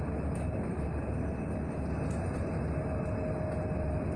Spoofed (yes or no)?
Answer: no